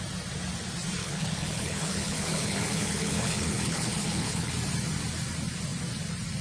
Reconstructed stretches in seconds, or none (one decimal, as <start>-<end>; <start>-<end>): 1.0-4.5